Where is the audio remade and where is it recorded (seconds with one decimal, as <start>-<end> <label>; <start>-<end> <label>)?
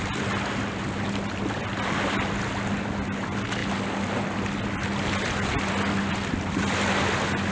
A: 0.0-7.5 recorded